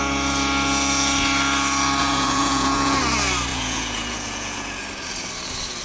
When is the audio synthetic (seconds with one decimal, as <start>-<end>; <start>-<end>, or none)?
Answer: 2.0-3.0; 3.5-4.8